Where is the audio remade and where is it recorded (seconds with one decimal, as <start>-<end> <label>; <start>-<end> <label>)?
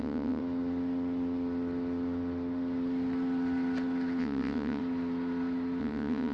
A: 0.0-0.4 remade; 0.4-4.2 recorded; 4.2-4.8 remade; 4.8-5.8 recorded; 5.8-6.3 remade